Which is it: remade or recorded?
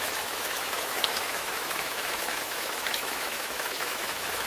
remade